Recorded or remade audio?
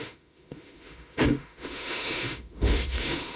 remade